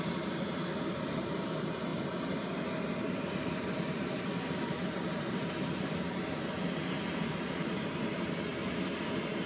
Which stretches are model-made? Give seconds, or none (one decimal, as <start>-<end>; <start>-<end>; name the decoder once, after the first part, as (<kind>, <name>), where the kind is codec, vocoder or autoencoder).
0.0-8.5 (vocoder, BigVGAN v2); 9.0-9.5